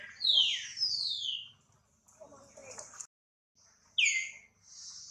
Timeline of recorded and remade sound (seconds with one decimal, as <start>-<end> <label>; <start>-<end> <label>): 0.0-5.1 recorded